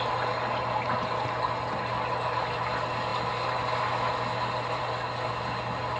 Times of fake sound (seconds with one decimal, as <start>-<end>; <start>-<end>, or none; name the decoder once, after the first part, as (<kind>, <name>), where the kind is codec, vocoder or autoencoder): none